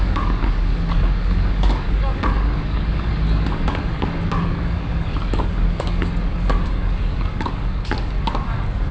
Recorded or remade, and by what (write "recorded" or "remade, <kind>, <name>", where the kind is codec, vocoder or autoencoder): remade, codec, DAC